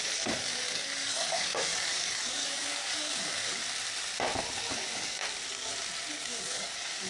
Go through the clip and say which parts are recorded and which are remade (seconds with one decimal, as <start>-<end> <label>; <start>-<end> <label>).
0.0-3.6 remade; 3.6-4.7 recorded; 4.7-5.2 remade; 5.2-6.1 recorded; 6.1-7.1 remade